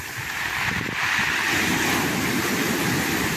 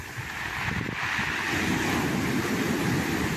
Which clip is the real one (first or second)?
second